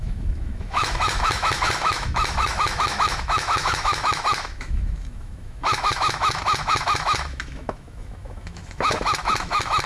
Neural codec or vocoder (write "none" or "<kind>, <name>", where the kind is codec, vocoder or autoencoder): autoencoder, DAC-VAE